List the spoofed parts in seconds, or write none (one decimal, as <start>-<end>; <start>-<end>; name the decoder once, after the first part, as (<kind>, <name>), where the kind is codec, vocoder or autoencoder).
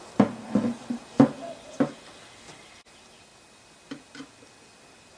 none